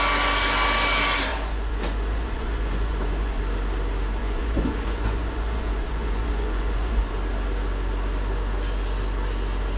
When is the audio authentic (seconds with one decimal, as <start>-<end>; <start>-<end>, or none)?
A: 0.0-1.3; 3.4-4.2; 7.1-9.8